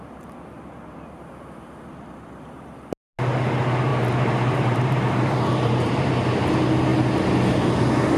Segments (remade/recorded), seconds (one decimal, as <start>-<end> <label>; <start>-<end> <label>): 0.0-3.9 recorded; 3.9-6.1 remade; 6.1-8.2 recorded